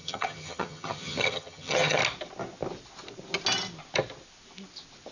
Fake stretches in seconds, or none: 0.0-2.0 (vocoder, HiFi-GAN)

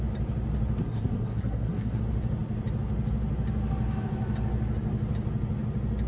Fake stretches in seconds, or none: 0.8-2.0 (codec, SNAC)

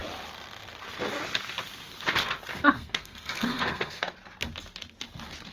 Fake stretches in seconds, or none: 2.5-4.1 (codec, SNAC)

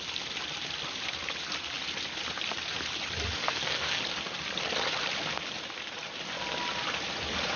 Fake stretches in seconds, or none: 3.4-4.0 (codec, SNAC)